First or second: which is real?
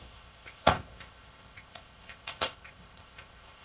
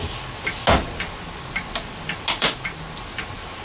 second